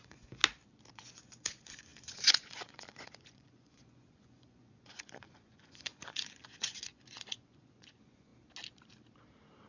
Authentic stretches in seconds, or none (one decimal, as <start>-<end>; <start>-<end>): 0.4-0.9; 8.3-9.7